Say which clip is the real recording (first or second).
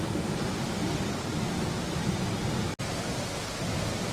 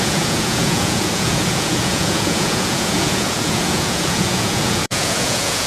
first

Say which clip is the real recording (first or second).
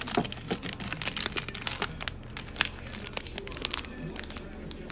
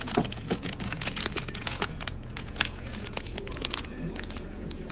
first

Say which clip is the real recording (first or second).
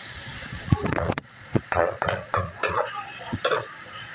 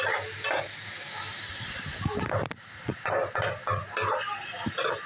second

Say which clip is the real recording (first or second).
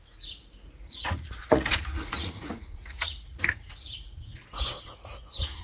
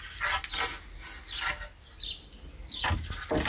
second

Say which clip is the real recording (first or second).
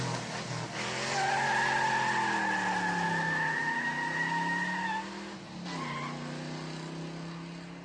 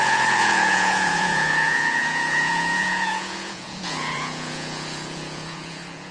first